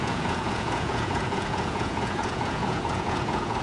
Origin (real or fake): fake